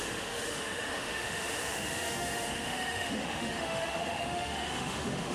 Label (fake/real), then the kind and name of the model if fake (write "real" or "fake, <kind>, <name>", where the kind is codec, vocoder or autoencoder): fake, autoencoder, DAC-VAE